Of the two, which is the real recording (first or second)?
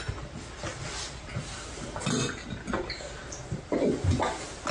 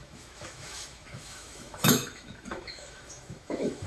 first